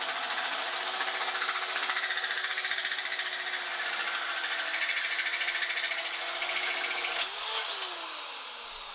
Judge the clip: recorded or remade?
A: recorded